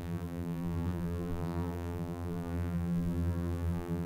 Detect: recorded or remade remade